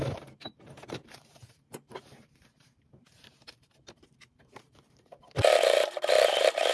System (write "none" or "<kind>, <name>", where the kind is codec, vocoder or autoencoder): vocoder, BigVGAN v2